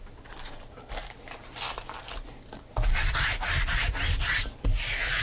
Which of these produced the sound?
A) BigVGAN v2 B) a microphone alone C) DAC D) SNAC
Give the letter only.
B